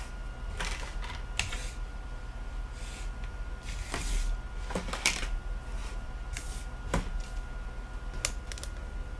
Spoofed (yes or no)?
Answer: no